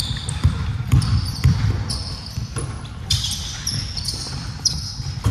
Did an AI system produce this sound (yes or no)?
yes